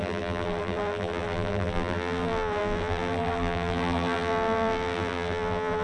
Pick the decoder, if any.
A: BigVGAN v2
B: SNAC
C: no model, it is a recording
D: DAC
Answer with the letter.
A